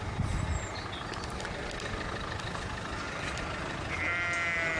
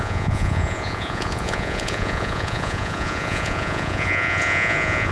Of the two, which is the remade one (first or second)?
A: second